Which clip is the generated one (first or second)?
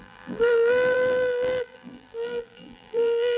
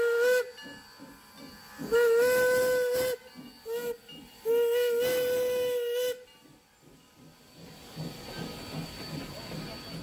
first